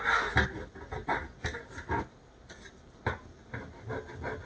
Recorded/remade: remade